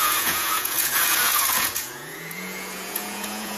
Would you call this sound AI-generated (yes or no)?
yes